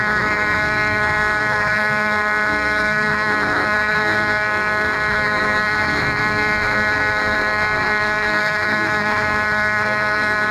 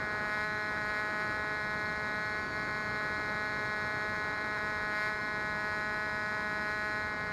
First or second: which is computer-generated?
first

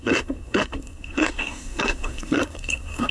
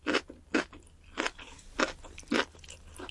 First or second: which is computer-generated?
first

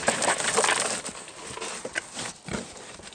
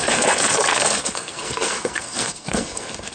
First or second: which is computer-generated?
second